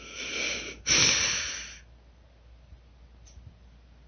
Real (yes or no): yes